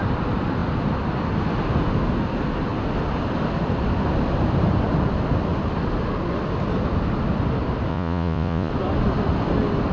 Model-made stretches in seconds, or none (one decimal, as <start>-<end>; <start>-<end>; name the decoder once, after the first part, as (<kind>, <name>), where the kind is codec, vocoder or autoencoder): 7.9-8.7 (vocoder, Vocos)